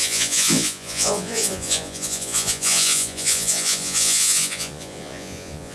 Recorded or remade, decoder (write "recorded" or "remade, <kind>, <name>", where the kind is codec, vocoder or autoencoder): remade, vocoder, Vocos